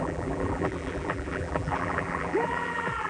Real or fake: fake